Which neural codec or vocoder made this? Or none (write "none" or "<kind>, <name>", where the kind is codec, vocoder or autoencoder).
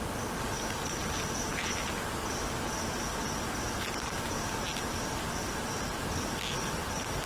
none